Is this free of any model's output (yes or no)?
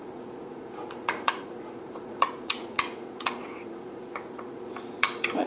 no